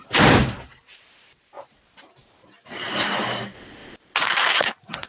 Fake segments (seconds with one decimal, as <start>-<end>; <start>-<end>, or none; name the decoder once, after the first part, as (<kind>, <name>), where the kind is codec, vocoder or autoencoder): 0.0-3.1 (vocoder, BigVGAN v2)